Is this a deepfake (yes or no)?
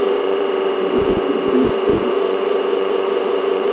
yes